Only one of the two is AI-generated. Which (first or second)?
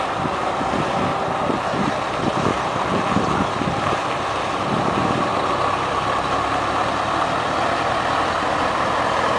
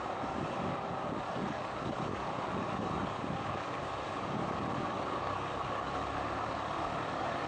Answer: second